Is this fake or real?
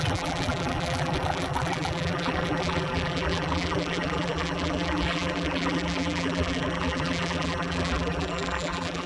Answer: fake